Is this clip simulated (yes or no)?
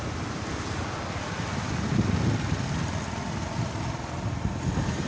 no